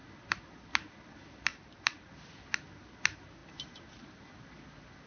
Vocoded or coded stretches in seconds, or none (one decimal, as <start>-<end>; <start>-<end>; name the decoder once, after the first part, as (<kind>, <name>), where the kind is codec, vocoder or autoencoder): 1.5-2.1 (vocoder, BigVGAN v2)

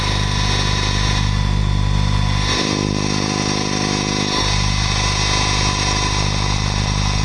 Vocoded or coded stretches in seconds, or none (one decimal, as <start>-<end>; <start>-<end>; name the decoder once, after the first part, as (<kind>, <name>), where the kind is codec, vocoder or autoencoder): 0.0-5.2 (vocoder, BigVGAN v2); 5.7-7.2